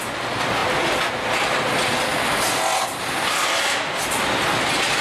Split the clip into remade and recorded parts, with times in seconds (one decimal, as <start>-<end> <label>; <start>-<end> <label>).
0.0-5.0 recorded